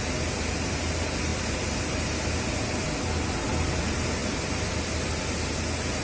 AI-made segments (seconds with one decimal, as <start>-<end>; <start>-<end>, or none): none